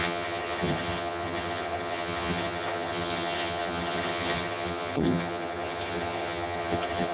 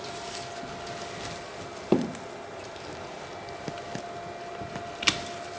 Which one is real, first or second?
second